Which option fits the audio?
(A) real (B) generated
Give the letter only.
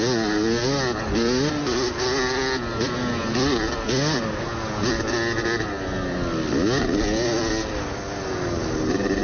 A